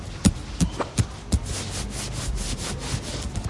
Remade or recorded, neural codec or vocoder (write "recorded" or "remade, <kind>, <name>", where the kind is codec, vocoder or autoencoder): recorded